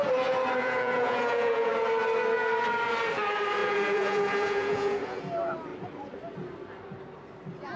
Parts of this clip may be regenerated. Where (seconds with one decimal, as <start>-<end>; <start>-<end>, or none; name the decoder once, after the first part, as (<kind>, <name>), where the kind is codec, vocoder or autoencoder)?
0.6-1.7 (vocoder, Vocos); 3.6-5.2